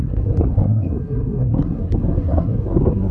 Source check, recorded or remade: remade